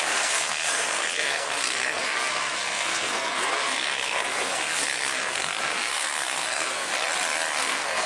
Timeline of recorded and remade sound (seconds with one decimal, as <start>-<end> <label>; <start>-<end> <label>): 0.0-6.9 remade; 6.9-7.6 recorded; 7.6-8.1 remade

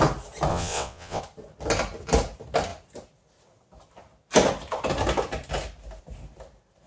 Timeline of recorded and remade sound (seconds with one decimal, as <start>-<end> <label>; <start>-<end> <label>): 0.0-0.5 recorded; 0.5-1.2 remade; 1.2-6.9 recorded

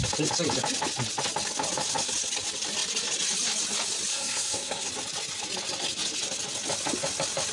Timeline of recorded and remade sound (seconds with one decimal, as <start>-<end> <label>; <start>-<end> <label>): 0.0-4.1 recorded; 4.1-4.9 remade; 4.9-7.5 recorded

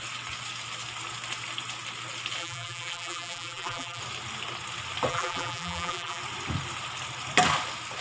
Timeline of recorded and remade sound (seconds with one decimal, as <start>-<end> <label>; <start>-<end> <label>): 0.0-2.4 recorded; 2.4-4.0 remade; 4.0-5.1 recorded; 5.1-6.2 remade; 6.2-8.0 recorded

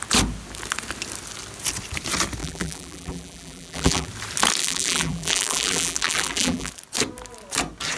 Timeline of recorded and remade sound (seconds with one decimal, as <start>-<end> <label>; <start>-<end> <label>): 0.0-2.4 recorded; 2.4-4.1 remade; 4.1-4.6 recorded; 4.6-6.7 remade; 6.7-8.0 recorded